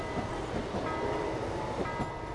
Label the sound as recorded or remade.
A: recorded